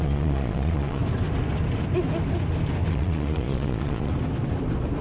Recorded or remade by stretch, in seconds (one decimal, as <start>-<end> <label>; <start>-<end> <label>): 0.0-1.0 remade; 1.0-2.9 recorded; 2.9-4.1 remade; 4.1-5.0 recorded